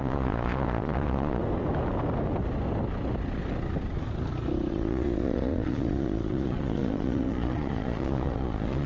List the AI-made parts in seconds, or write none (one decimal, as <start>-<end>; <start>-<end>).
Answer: 0.0-1.4; 4.7-8.9